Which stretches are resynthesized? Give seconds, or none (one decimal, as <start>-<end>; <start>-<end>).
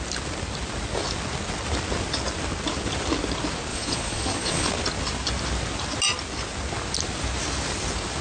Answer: 3.7-4.7